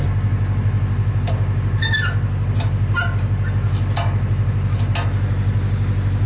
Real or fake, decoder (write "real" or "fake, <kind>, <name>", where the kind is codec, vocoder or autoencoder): real